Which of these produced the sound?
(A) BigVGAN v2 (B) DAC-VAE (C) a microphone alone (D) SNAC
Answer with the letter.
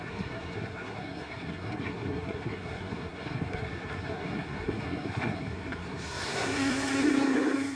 D